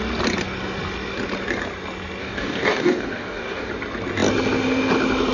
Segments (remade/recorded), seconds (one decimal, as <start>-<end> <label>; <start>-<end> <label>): 0.0-2.2 recorded; 2.2-3.7 remade; 3.7-5.3 recorded

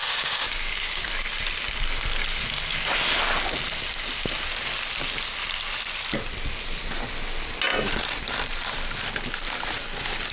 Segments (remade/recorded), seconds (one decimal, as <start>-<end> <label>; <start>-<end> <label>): 0.0-1.1 remade; 1.1-10.3 recorded

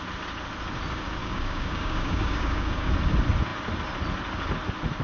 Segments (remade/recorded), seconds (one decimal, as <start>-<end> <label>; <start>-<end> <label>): 0.0-1.2 recorded; 1.2-2.9 remade; 2.9-5.0 recorded

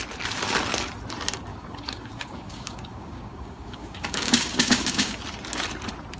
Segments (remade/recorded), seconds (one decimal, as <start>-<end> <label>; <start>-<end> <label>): 0.0-1.5 recorded; 1.5-5.2 remade; 5.2-6.2 recorded

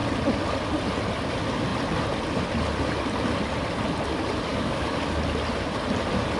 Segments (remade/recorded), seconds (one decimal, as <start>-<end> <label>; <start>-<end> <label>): 0.0-4.5 recorded; 4.5-5.0 remade; 5.0-6.4 recorded

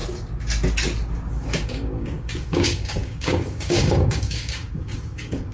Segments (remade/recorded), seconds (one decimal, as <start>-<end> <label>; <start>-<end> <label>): 0.0-1.3 recorded; 1.3-5.5 remade

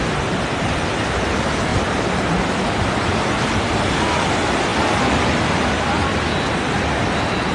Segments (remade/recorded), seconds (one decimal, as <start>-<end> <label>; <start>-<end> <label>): 0.0-7.5 recorded